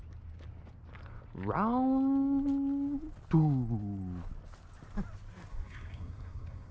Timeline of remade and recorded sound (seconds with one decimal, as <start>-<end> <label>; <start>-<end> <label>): 0.0-5.5 recorded; 5.5-6.7 remade